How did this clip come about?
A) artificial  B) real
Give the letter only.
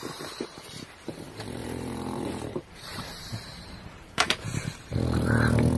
A